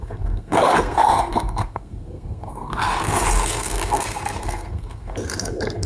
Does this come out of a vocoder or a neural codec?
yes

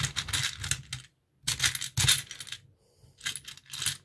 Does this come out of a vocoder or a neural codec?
no